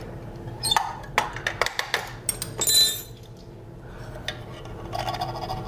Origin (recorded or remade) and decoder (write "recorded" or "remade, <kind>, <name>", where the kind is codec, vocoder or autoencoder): recorded